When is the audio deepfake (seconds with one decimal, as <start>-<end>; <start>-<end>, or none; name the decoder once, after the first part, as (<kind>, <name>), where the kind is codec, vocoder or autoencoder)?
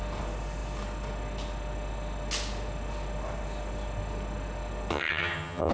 4.9-5.7 (vocoder, HiFi-GAN)